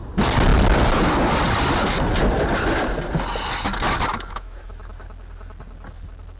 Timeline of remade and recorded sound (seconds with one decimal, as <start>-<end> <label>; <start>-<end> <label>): 0.0-4.1 recorded; 4.1-4.7 remade; 4.7-6.4 recorded